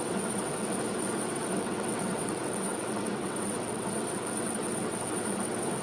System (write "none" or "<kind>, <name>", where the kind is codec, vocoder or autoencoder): vocoder, WaveNeXt